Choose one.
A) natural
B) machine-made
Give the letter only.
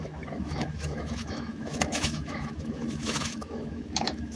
B